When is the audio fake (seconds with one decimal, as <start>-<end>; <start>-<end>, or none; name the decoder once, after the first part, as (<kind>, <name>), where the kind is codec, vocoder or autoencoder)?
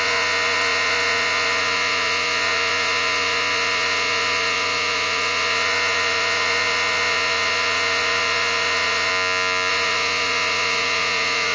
0.0-9.1 (vocoder, Vocos); 9.7-11.5